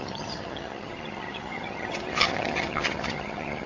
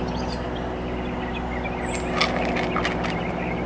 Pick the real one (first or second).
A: second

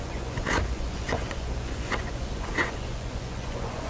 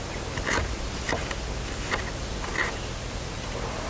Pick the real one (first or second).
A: second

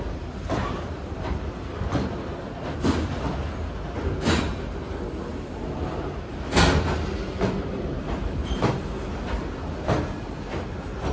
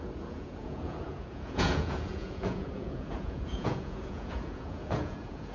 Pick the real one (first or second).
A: first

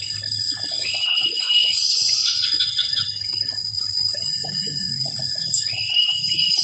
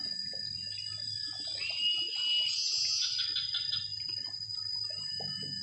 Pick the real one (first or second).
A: second